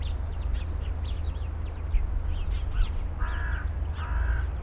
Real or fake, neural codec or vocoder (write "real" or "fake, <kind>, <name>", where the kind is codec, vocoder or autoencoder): real